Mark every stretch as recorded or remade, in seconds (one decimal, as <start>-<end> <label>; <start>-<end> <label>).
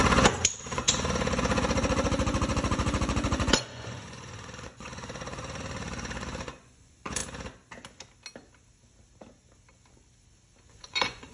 0.0-7.2 remade; 7.2-10.7 recorded; 10.7-11.3 remade